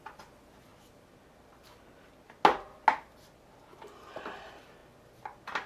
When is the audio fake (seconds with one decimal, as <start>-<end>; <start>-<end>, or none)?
none